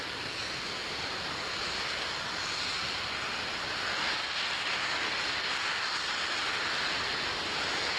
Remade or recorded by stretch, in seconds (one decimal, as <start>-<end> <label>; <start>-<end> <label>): 0.0-8.0 recorded